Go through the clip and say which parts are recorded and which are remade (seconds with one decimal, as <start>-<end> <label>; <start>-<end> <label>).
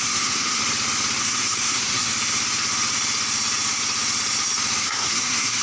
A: 0.0-0.6 remade; 0.6-1.2 recorded; 1.2-2.1 remade; 2.1-4.8 recorded; 4.8-5.6 remade